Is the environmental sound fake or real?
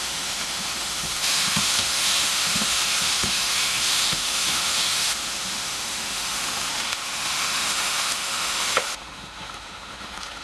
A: fake